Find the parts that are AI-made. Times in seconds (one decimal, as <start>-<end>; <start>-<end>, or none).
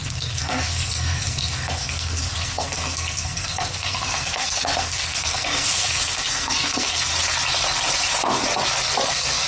0.0-7.1; 9.1-9.5